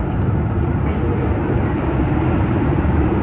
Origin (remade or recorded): recorded